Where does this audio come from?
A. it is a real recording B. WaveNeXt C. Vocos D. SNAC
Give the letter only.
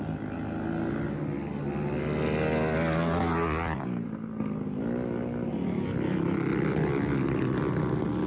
A